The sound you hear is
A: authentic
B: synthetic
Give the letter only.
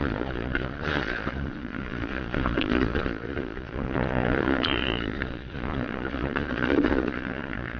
B